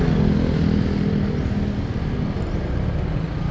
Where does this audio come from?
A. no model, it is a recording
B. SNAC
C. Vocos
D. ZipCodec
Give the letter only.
A